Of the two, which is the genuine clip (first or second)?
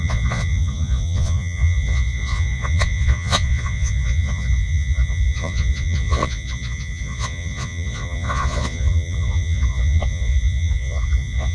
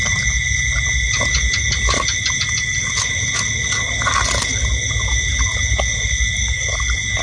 second